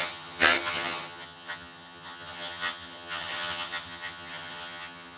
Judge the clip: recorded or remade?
remade